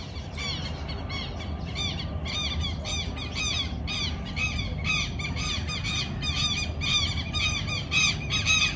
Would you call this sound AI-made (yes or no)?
no